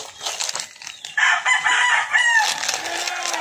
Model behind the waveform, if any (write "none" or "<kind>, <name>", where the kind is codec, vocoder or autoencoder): none